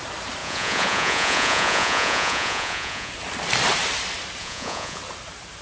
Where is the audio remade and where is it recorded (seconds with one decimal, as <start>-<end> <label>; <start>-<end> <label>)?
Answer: 0.0-0.4 recorded; 0.4-3.1 remade; 3.1-4.4 recorded; 4.4-5.0 remade; 5.0-5.6 recorded